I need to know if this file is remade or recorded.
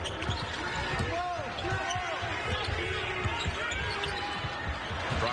recorded